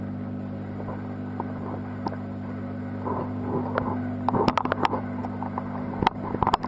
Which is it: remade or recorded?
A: recorded